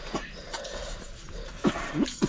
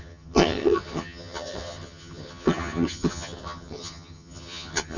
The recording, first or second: first